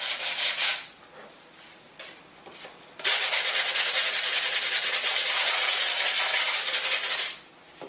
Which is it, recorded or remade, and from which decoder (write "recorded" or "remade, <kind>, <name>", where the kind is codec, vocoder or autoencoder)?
recorded